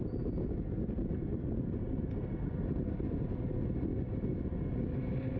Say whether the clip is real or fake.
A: real